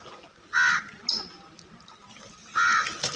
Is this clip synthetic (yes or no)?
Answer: no